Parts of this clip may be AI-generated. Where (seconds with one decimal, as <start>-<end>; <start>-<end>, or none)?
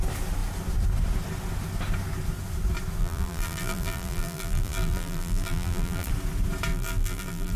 3.0-6.1; 6.7-7.6